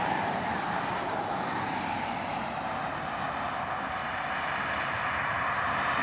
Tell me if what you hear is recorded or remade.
recorded